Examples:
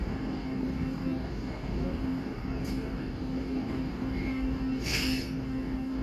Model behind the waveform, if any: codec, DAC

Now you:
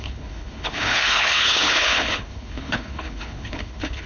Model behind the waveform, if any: codec, HILCodec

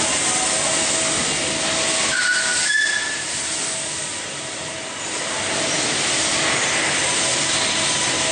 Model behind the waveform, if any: none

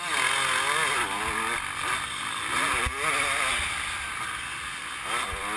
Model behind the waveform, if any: none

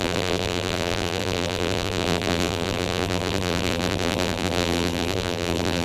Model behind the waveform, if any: vocoder, BigVGAN v2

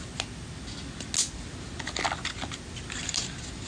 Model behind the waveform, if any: none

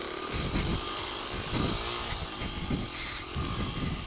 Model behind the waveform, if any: none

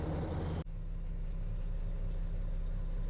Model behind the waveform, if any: none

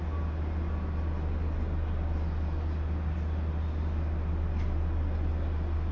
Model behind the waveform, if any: none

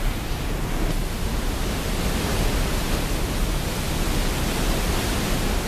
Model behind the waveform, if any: none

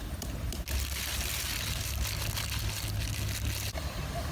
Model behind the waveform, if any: none